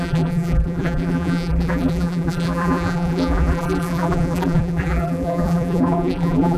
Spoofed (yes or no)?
yes